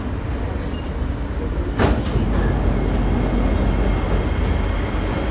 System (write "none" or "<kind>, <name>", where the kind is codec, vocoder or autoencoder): none